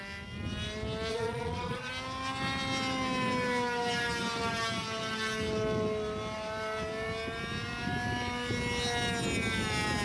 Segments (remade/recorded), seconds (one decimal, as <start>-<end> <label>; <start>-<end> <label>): 0.0-1.1 recorded; 1.1-1.9 remade; 1.9-10.0 recorded